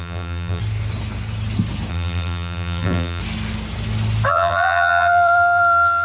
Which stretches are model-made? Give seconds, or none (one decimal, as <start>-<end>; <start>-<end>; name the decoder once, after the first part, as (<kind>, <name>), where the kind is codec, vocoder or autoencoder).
0.0-0.6 (vocoder, BigVGAN v2); 1.9-3.2; 4.3-6.0